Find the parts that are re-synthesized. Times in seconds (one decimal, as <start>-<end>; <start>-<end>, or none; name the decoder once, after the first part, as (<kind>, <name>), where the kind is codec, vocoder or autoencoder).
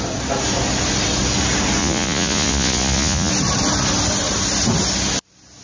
1.8-3.3 (vocoder, Vocos)